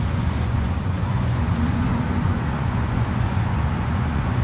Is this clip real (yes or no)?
no